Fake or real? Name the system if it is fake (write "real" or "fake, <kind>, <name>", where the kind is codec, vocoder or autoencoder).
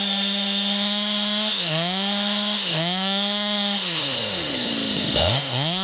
fake, autoencoder, DAC-VAE